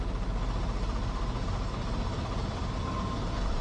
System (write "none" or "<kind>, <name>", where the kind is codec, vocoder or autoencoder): none